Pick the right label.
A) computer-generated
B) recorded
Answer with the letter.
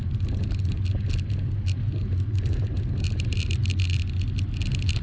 B